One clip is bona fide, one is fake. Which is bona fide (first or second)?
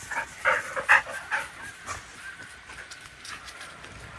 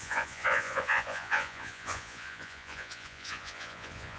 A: first